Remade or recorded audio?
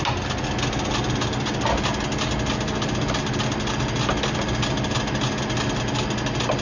recorded